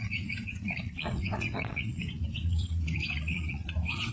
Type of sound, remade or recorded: remade